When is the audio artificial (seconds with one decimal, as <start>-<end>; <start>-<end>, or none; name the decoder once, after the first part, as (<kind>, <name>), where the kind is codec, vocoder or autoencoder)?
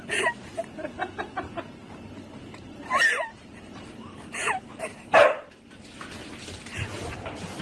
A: 0.5-5.1 (vocoder, BigVGAN v2); 6.2-7.6